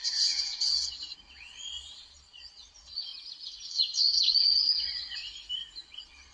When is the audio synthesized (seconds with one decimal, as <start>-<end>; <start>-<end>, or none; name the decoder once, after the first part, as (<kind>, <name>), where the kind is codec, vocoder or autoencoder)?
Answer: 0.0-3.1 (vocoder, Vocos); 4.3-5.2; 5.8-6.3